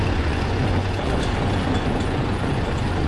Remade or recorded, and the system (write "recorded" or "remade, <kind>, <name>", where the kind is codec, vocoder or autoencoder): remade, vocoder, Vocos